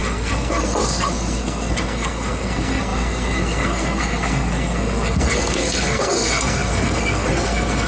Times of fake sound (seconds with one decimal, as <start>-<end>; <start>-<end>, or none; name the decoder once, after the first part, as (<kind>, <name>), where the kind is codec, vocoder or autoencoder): 0.0-7.9 (codec, SNAC)